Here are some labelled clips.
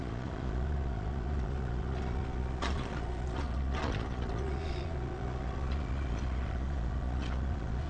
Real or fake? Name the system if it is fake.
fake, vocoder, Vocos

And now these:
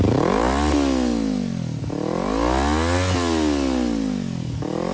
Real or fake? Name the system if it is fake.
real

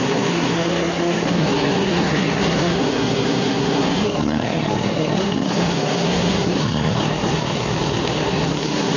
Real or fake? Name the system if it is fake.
fake, codec, SNAC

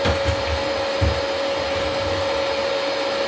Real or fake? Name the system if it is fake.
real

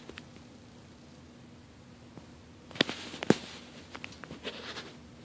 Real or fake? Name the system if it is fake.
real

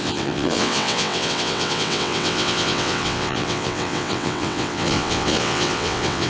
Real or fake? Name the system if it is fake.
fake, vocoder, WaveNeXt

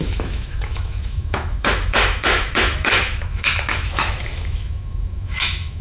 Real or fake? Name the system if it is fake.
fake, autoencoder, DAC-VAE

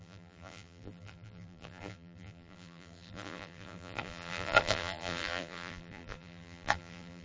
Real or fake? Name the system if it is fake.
fake, vocoder, BigVGAN v2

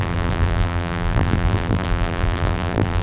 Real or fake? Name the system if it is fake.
fake, vocoder, BigVGAN v2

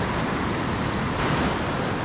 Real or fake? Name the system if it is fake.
real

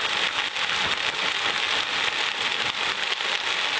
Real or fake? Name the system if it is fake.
real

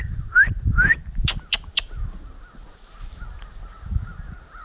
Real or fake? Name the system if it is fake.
real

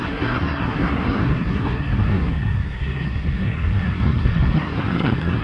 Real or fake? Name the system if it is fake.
fake, codec, SNAC